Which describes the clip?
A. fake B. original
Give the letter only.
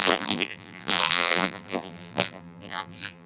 A